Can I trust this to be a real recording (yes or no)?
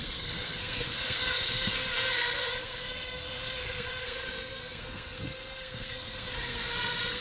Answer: no